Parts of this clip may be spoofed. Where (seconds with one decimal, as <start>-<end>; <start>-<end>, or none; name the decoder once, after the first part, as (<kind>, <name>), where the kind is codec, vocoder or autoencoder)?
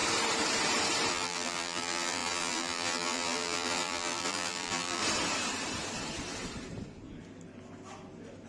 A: 1.1-5.0 (vocoder, BigVGAN v2)